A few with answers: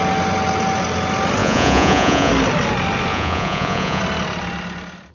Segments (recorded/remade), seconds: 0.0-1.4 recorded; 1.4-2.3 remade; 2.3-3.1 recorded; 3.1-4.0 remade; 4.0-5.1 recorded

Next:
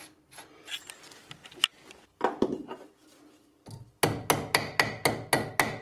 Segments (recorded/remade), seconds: 0.0-5.8 recorded

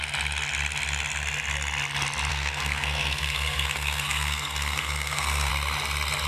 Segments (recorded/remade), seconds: 0.0-2.3 recorded; 2.3-5.5 remade; 5.5-6.3 recorded